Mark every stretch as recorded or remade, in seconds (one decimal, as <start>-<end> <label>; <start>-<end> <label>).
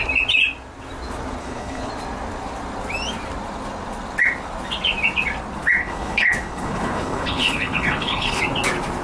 0.0-1.4 recorded; 1.4-1.9 remade; 1.9-5.8 recorded; 5.8-8.4 remade; 8.4-9.0 recorded